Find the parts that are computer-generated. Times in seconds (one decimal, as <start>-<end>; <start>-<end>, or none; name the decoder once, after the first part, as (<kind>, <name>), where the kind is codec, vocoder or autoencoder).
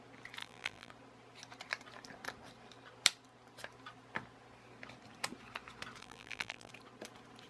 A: 0.4-0.9 (vocoder, BigVGAN v2); 6.0-6.7